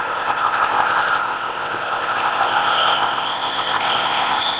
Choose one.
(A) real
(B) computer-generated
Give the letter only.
B